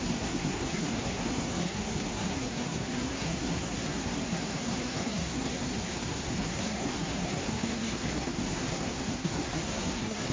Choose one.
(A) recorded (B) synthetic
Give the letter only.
B